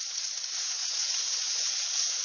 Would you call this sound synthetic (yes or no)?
yes